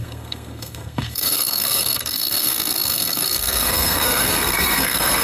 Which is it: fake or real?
fake